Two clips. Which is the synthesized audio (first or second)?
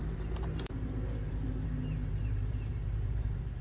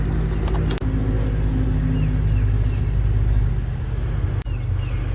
first